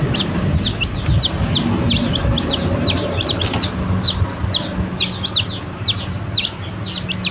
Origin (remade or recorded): recorded